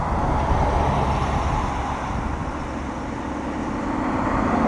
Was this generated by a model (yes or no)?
no